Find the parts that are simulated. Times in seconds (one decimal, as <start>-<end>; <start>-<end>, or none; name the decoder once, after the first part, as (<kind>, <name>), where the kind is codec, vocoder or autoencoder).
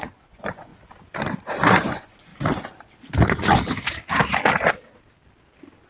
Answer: 0.0-0.7 (vocoder, Vocos); 1.7-2.3